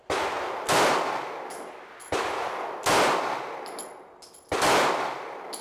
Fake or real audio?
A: real